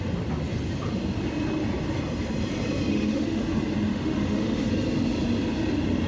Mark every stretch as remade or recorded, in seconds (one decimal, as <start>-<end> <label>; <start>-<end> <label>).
0.0-2.9 recorded; 2.9-3.4 remade; 3.4-3.9 recorded; 3.9-4.7 remade; 4.7-6.1 recorded